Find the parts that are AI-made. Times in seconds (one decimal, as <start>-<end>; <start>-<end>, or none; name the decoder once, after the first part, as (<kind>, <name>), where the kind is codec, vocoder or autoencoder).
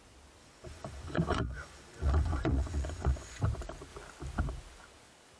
0.4-3.4 (vocoder, Vocos)